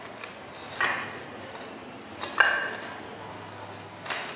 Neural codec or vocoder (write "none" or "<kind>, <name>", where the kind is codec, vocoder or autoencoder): none